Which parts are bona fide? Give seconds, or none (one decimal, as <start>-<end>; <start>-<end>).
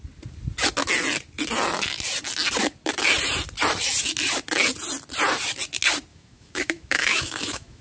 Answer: 0.0-6.1